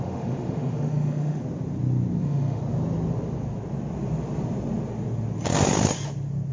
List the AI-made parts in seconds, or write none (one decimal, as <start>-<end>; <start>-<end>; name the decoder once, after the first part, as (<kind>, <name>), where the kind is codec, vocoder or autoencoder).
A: 0.0-1.4 (autoencoder, DAC-VAE); 2.2-2.6